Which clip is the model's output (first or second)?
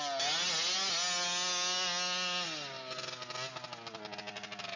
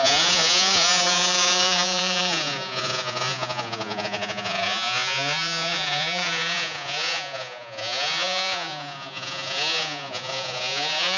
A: second